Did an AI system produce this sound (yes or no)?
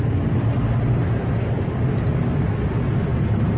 no